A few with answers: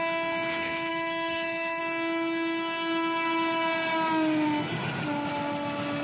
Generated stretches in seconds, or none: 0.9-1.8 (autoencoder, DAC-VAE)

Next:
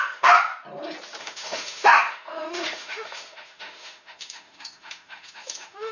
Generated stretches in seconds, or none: 0.0-0.5 (autoencoder, DAC-VAE); 1.2-5.9

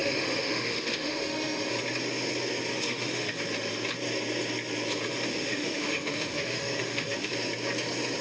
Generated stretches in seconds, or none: 0.0-1.7 (autoencoder, DAC-VAE); 2.7-3.4; 5.3-7.3